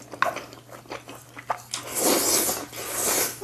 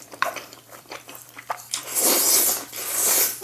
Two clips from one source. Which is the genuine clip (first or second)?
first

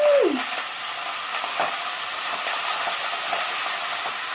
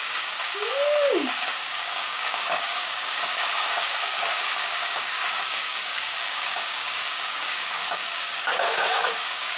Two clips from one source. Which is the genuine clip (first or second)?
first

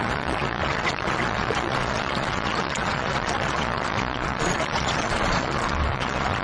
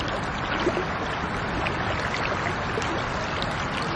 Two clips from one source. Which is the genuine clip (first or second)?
second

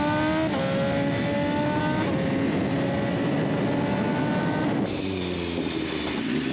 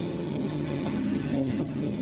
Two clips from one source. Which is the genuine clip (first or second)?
first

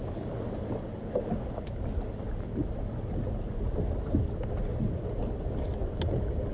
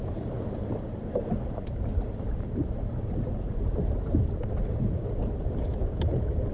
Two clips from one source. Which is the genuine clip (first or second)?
first